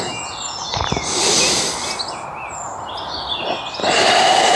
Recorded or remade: recorded